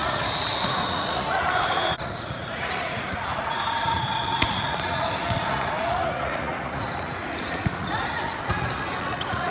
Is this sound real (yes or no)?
no